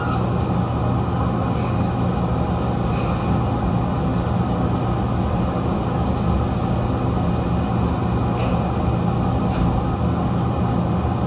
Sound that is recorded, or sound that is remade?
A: recorded